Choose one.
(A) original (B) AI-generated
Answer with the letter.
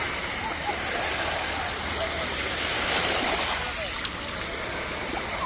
A